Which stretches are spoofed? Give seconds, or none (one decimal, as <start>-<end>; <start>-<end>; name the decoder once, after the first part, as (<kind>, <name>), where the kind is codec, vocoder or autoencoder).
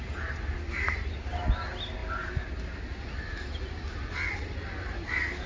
none